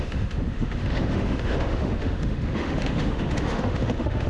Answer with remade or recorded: remade